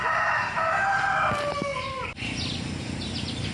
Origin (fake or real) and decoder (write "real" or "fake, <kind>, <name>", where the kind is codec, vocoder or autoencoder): real